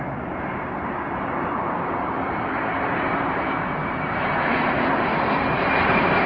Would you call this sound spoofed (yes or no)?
yes